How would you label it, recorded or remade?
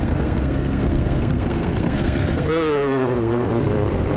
remade